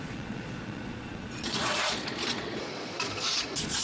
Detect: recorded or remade remade